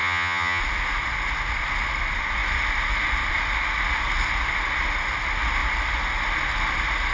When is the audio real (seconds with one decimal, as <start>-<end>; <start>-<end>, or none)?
0.6-7.1